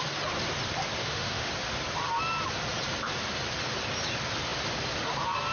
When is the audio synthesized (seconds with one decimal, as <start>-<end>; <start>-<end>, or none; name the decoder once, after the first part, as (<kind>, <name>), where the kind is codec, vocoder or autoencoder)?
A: 1.0-1.5 (autoencoder, DAC-VAE)